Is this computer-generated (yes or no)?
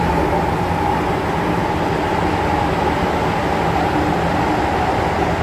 no